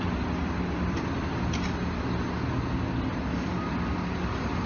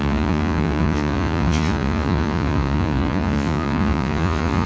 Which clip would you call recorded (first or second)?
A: first